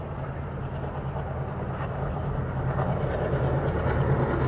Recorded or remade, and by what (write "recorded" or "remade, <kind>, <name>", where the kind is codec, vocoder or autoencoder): recorded